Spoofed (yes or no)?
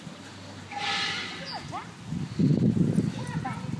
no